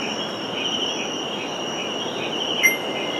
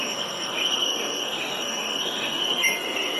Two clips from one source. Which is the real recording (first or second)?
first